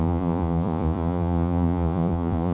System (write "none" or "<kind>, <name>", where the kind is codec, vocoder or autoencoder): vocoder, Vocos